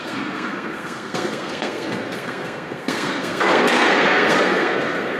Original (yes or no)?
no